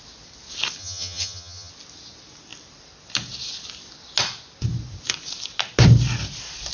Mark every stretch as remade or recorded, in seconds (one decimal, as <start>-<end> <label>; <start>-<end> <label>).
0.0-0.8 recorded; 0.8-1.7 remade; 1.7-6.7 recorded